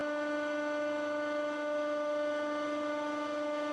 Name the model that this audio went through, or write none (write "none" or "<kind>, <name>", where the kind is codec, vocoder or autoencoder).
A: none